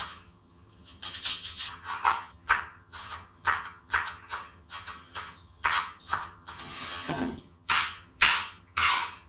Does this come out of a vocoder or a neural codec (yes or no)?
yes